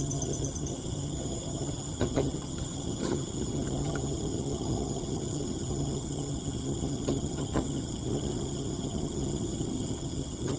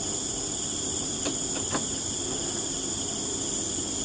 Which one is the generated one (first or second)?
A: first